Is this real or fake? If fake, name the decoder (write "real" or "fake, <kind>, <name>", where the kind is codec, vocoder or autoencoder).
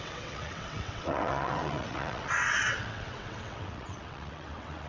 fake, vocoder, WaveNeXt